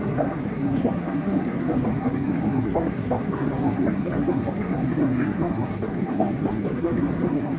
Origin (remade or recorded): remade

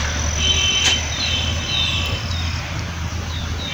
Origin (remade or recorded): recorded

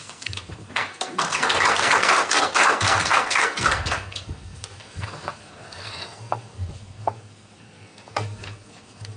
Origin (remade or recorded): remade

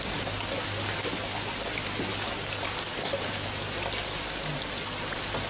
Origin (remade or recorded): recorded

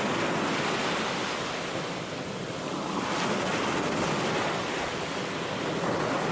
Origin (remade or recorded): recorded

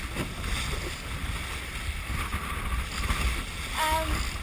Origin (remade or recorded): recorded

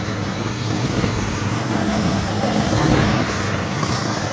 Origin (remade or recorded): remade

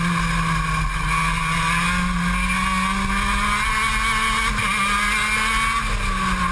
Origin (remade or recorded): recorded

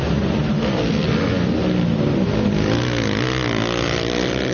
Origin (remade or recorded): recorded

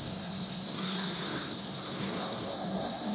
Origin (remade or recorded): remade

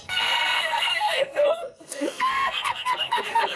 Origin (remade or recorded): remade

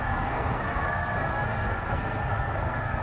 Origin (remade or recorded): remade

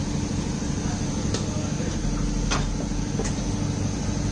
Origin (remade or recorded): recorded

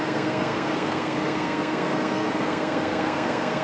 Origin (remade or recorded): remade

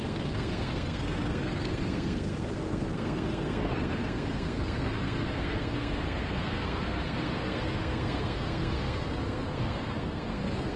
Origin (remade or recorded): remade